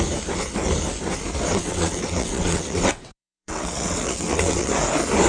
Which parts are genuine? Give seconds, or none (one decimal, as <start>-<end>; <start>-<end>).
0.0-1.5; 4.7-5.3